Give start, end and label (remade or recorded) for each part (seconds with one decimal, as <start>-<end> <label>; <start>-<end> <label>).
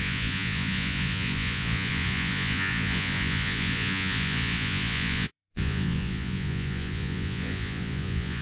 0.0-8.4 remade